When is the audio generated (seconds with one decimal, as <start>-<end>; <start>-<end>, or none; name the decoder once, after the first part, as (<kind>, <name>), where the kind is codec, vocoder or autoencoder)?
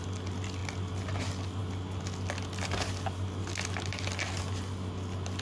none